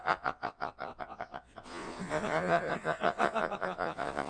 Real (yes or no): no